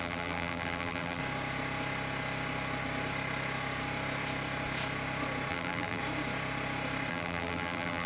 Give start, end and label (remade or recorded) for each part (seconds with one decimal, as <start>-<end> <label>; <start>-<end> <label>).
0.0-1.2 remade; 1.2-5.5 recorded; 5.5-6.0 remade; 6.0-7.1 recorded; 7.1-8.1 remade